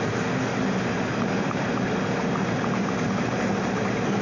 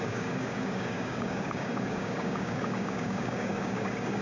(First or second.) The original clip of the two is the first